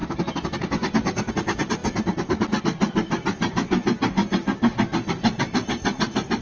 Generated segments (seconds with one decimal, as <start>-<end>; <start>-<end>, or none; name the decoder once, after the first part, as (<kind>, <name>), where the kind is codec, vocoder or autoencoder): none